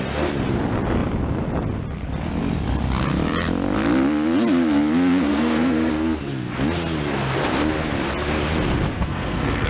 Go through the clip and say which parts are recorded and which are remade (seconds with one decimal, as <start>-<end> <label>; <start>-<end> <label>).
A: 0.0-5.3 recorded; 5.3-5.9 remade; 5.9-8.9 recorded; 8.9-9.7 remade